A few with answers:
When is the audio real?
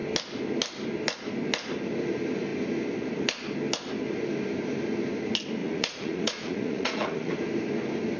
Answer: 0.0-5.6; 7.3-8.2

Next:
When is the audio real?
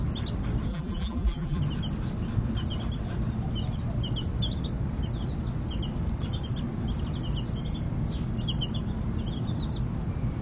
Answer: 0.0-0.7; 1.6-10.4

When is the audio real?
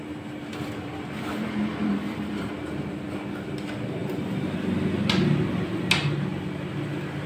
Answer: 0.0-0.4; 2.5-7.3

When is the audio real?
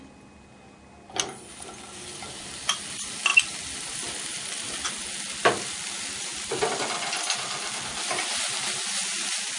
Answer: 0.0-9.6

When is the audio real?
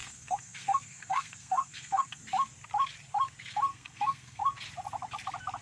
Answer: 2.2-3.7; 4.4-5.6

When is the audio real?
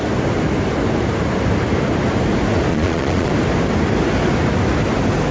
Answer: 0.0-2.7; 3.3-5.3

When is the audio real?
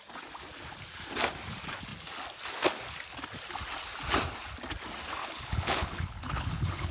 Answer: 0.0-5.2